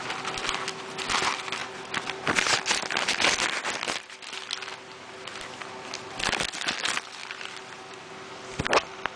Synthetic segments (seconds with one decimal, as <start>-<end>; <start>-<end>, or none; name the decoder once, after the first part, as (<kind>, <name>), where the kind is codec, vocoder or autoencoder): none